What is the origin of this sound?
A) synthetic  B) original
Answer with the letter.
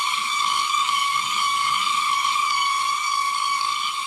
A